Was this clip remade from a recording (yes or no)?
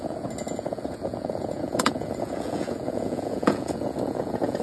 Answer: yes